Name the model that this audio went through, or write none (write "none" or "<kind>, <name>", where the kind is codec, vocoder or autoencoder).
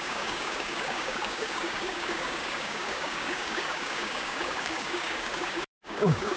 codec, DAC